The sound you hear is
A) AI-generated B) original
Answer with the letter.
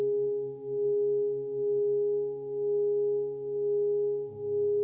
B